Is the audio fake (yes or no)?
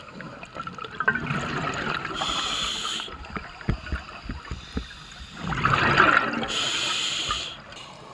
no